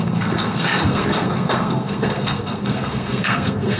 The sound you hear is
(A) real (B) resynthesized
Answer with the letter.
B